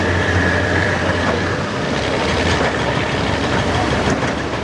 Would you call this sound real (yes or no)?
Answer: no